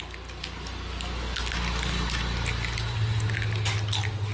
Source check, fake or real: real